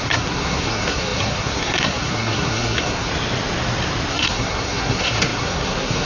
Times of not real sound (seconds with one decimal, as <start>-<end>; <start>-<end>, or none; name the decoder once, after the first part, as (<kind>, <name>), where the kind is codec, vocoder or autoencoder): 0.0-3.1 (codec, SNAC); 4.1-6.1